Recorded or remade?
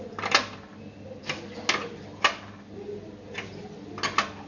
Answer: recorded